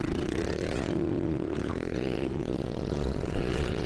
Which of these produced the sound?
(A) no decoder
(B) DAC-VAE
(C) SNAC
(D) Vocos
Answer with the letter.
D